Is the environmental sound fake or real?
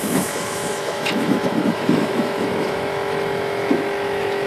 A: fake